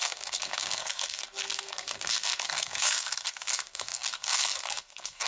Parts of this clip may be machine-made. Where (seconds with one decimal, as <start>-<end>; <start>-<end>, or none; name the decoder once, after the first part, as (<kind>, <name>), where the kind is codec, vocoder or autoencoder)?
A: 0.0-5.3 (codec, SNAC)